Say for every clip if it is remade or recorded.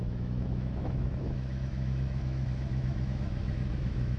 remade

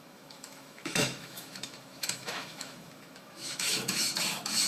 remade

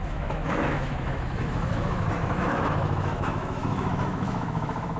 remade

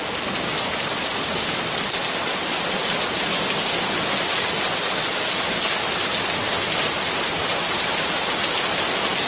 recorded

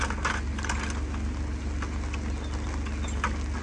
recorded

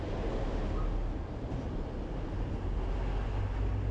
recorded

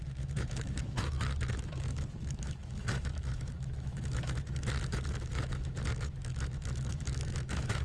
remade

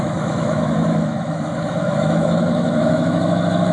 remade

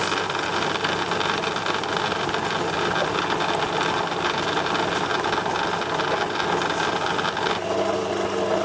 recorded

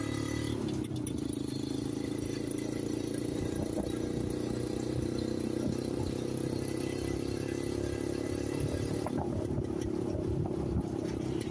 recorded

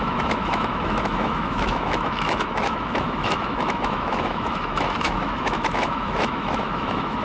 remade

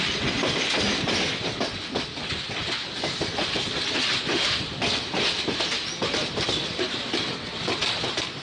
recorded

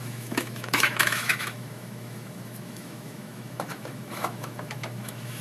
remade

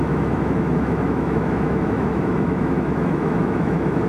remade